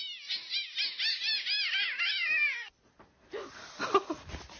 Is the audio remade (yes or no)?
no